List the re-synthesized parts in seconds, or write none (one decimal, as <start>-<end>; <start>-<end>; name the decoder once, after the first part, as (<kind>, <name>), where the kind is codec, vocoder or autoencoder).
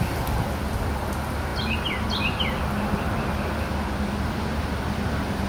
none